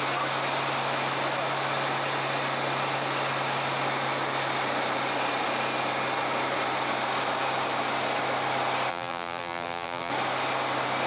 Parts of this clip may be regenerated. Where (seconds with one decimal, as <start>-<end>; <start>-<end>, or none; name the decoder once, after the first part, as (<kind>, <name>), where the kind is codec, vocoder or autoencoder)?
8.9-10.1 (vocoder, BigVGAN v2)